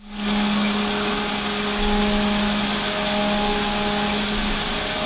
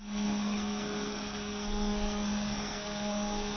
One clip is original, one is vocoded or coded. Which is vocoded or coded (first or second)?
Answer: second